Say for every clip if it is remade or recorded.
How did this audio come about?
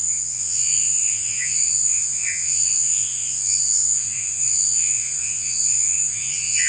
remade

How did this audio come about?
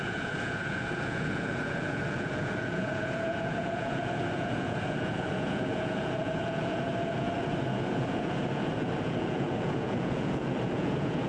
remade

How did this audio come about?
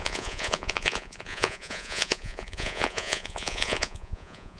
remade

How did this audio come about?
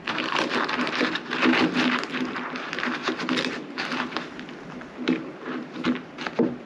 recorded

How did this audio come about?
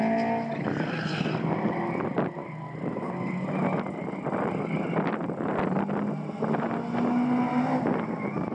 recorded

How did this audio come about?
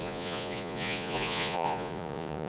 remade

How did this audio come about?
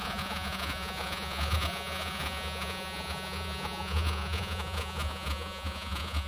remade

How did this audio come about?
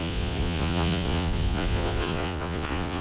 remade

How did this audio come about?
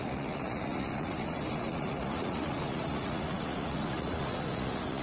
remade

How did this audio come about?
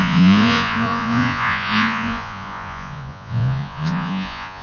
remade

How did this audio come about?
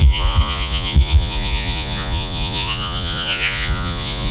remade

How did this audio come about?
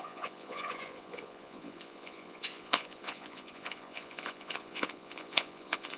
remade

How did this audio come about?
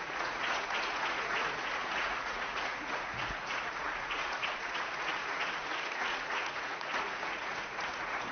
remade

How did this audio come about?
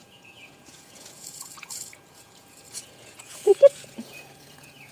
remade